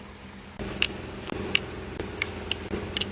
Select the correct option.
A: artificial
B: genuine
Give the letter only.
B